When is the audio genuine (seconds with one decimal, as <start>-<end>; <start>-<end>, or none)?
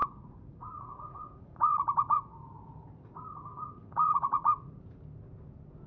2.4-3.5; 4.8-5.9